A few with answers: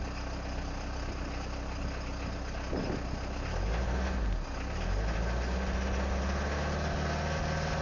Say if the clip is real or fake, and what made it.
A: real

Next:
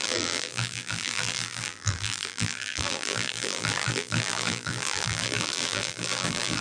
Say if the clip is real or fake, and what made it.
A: fake, vocoder, BigVGAN v2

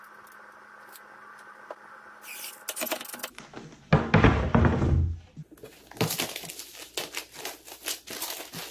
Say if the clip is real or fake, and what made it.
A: real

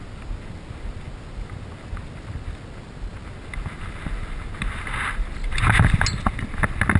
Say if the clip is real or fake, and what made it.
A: real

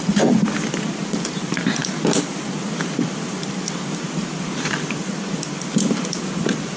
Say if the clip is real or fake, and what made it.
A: fake, vocoder, BigVGAN v2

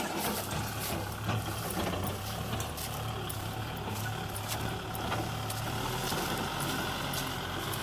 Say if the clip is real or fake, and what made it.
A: real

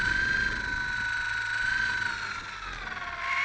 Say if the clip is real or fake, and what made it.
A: real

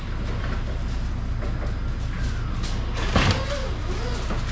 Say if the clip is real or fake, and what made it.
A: real